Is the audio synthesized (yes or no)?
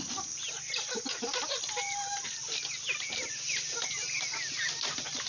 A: no